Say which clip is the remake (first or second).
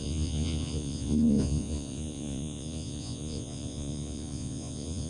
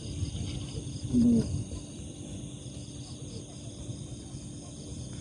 first